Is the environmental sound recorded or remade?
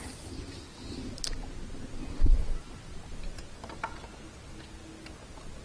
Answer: recorded